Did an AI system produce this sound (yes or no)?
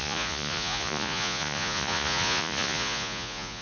yes